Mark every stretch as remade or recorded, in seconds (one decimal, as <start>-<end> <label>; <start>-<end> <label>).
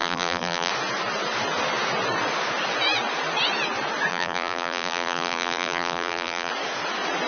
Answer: 0.0-0.7 remade; 0.7-4.1 recorded; 4.1-6.5 remade; 6.5-7.3 recorded